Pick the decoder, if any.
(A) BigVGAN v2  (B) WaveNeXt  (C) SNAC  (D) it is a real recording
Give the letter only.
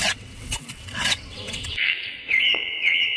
B